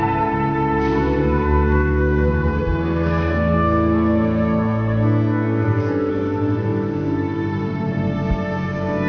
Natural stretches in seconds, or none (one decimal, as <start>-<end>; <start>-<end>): 0.0-1.2; 6.1-9.1